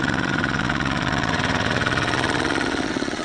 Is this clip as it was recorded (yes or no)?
no